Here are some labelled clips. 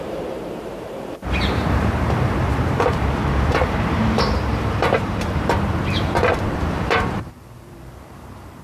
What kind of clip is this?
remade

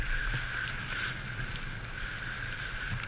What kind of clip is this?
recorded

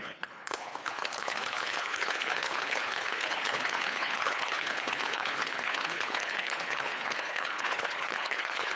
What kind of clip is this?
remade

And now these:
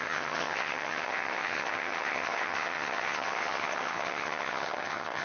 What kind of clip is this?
remade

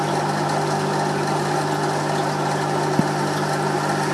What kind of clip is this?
recorded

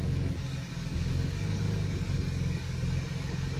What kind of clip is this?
remade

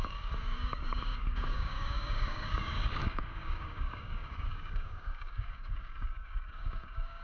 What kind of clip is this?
remade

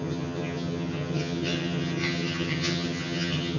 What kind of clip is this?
remade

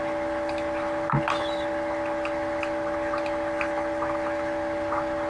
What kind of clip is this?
recorded